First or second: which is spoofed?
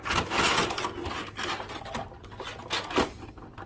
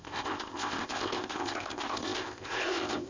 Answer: second